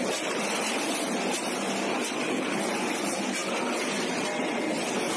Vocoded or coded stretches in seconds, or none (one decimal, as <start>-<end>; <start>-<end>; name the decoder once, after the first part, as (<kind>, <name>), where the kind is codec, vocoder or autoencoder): none